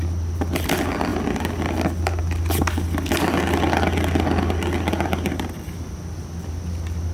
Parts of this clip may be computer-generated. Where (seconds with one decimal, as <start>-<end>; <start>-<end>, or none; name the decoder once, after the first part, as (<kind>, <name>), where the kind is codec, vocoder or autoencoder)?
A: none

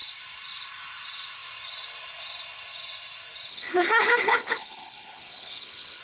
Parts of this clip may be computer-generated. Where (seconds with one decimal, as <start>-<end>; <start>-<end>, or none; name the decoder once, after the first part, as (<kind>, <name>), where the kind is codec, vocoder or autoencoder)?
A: 3.5-6.0 (codec, HILCodec)

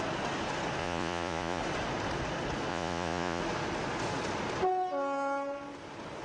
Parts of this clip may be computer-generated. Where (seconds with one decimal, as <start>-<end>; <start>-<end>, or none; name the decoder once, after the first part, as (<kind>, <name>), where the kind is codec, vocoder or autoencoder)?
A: 0.8-1.6 (vocoder, Vocos); 2.7-3.4

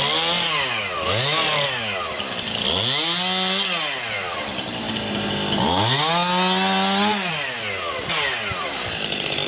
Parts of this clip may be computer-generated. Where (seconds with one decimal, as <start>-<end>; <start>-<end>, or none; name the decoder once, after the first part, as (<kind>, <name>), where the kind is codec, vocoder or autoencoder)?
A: none

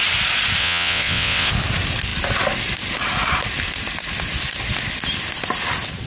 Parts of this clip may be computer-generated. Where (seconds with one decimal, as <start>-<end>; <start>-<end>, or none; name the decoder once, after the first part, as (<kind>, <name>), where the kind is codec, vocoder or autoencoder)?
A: 0.6-1.5 (vocoder, WaveNeXt)

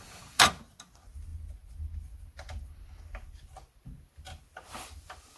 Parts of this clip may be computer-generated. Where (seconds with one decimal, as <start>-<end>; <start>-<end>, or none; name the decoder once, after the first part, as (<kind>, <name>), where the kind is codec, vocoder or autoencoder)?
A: none

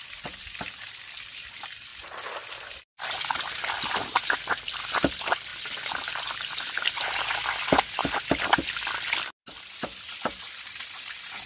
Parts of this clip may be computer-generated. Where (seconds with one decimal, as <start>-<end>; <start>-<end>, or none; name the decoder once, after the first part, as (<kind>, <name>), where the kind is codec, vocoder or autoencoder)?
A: 0.0-1.9 (vocoder, BigVGAN v2); 2.8-8.0; 10.4-11.5